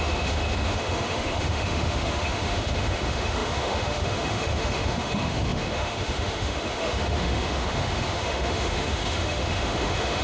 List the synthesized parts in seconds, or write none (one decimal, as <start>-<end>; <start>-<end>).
0.0-10.2